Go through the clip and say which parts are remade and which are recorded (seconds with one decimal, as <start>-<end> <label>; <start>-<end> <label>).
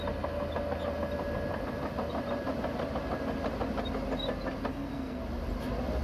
0.0-4.7 recorded; 4.7-5.2 remade; 5.2-6.0 recorded